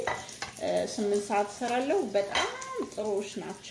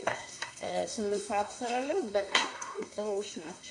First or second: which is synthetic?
second